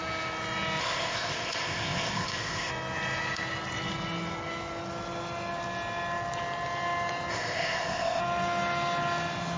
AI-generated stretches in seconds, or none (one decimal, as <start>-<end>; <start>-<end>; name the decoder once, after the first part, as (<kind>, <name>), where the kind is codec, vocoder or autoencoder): 0.8-2.7 (codec, ZipCodec); 7.3-8.2